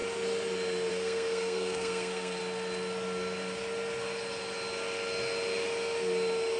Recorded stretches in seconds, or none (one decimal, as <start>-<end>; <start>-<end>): 0.0-0.9; 2.4-6.6